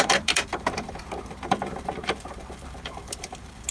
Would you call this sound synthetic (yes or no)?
yes